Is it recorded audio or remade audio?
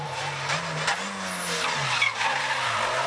recorded